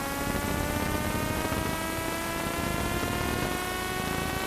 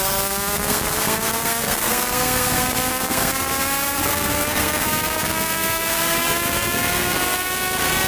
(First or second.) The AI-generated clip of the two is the second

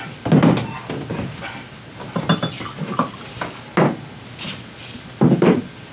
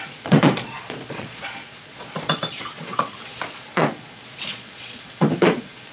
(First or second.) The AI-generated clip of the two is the second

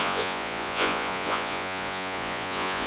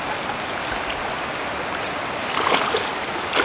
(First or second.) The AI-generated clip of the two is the first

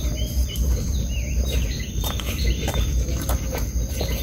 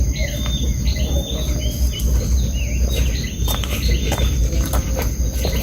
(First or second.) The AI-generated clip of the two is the first